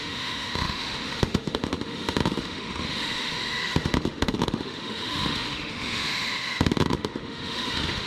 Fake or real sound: fake